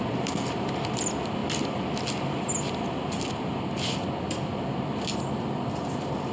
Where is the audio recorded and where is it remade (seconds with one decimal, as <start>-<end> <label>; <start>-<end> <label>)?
0.0-6.3 recorded